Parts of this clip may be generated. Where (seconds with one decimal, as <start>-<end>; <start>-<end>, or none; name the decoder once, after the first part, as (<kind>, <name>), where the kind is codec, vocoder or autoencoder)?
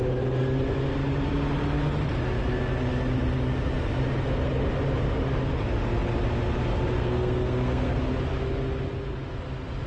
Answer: 7.0-8.0 (codec, SNAC)